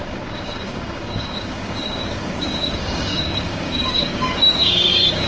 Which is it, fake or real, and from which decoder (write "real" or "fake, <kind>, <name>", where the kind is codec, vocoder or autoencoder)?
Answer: fake, codec, DAC